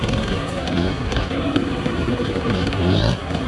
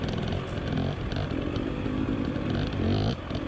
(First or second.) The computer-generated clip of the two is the first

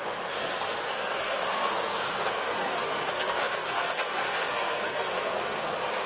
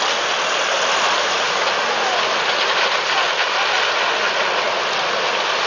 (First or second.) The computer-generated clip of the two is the first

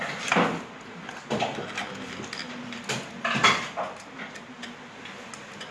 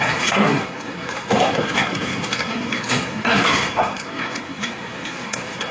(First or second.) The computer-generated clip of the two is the second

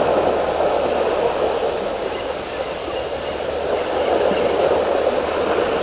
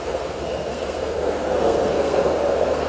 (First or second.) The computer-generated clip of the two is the second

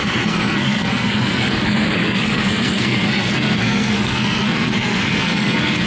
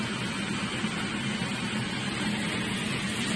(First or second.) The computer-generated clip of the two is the first